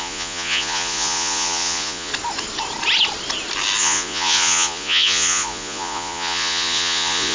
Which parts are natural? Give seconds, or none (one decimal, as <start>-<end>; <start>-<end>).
2.1-3.8